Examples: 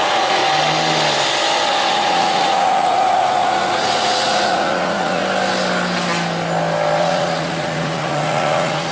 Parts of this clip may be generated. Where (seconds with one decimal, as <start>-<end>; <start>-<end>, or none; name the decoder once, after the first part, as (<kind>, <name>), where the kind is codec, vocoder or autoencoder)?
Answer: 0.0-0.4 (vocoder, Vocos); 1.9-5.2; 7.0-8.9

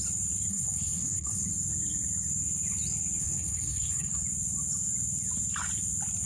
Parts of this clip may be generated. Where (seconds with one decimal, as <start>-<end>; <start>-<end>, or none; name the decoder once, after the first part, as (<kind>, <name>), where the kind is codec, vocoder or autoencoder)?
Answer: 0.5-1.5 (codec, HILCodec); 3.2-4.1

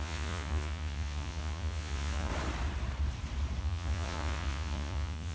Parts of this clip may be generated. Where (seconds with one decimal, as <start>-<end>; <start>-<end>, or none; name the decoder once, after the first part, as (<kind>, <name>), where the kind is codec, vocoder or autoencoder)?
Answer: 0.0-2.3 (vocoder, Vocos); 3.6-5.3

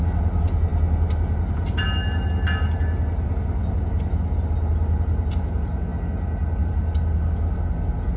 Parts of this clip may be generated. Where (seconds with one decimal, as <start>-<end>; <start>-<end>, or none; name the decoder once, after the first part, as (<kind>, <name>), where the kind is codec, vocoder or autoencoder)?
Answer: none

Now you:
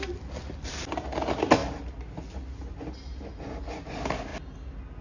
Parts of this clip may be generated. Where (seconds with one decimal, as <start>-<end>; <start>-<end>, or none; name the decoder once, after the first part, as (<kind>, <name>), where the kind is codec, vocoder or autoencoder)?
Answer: none

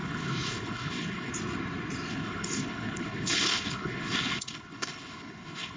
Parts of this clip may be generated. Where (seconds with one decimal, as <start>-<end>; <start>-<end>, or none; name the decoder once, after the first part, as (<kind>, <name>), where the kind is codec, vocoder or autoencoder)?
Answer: 0.0-1.3 (codec, HILCodec); 2.1-5.8

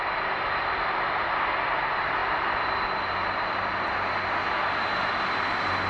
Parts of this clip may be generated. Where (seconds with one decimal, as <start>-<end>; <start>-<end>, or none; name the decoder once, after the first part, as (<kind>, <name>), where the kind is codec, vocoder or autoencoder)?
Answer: none